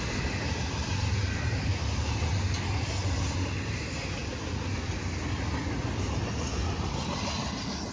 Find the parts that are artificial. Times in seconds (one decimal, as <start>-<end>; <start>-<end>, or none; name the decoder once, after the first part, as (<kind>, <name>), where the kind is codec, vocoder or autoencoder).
none